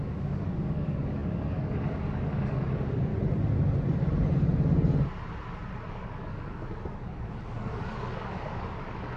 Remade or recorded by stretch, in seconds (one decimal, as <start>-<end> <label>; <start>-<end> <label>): 0.0-3.1 remade; 3.1-5.9 recorded; 5.9-9.2 remade